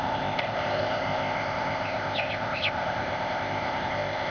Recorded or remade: remade